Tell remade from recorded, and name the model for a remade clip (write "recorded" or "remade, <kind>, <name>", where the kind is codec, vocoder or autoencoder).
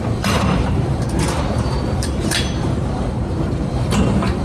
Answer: remade, vocoder, BigVGAN v2